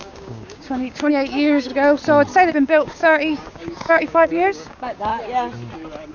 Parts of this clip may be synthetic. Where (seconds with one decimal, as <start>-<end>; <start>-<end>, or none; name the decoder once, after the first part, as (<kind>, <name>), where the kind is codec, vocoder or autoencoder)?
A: 0.0-1.7 (codec, DAC); 2.5-5.1